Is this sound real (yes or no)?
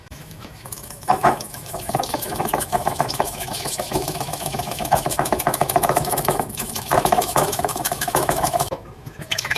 no